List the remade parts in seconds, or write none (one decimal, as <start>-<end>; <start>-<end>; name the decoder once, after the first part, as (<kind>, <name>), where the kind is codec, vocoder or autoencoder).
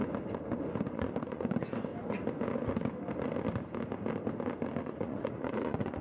0.8-1.9 (vocoder, Vocos); 4.8-6.0